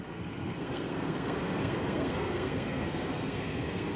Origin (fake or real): fake